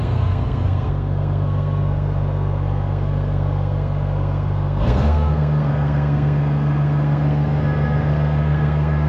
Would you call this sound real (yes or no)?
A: no